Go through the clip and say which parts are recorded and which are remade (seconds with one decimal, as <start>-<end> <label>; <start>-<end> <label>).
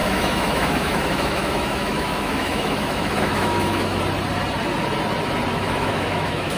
0.0-4.0 remade; 4.0-5.5 recorded; 5.5-6.6 remade